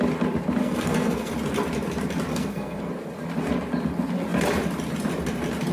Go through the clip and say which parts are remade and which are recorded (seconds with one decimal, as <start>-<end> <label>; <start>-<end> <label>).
0.0-0.6 recorded; 0.6-1.3 remade; 1.3-2.3 recorded; 2.3-2.9 remade; 2.9-5.7 recorded